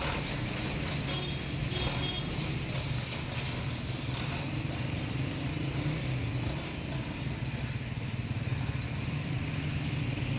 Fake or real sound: real